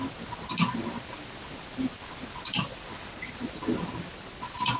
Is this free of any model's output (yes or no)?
yes